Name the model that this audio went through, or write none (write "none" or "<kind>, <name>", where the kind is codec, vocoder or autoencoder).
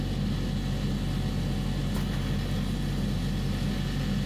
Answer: none